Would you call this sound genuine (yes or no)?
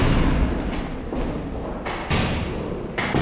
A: yes